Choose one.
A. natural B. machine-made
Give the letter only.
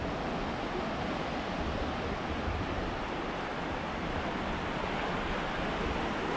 A